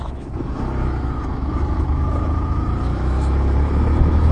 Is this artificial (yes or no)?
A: yes